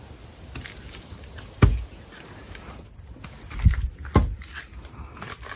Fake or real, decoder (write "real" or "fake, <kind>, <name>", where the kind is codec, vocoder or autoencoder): real